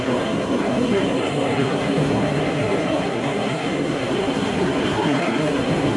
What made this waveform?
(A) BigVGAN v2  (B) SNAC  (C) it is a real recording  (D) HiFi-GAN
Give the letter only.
B